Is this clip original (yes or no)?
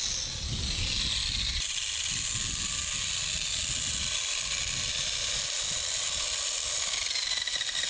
yes